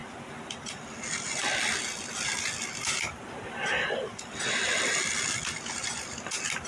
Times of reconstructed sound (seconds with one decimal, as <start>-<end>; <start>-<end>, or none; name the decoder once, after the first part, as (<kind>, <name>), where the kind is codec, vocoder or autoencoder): none